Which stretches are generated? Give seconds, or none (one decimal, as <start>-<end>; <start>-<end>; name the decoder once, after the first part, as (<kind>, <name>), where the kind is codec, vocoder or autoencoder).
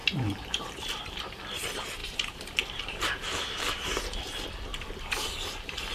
0.0-1.2 (vocoder, BigVGAN v2); 2.0-3.3; 4.7-5.9